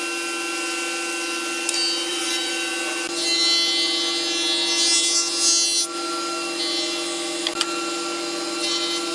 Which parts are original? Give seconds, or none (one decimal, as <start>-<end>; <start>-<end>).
0.0-2.1; 2.7-9.1